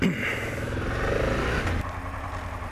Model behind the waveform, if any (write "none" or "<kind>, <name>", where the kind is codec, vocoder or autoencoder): none